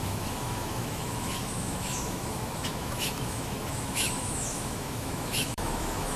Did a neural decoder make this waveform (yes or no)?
yes